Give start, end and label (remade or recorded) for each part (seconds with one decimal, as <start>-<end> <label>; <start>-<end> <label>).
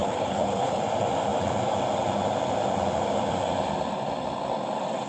0.0-0.8 remade; 0.8-5.1 recorded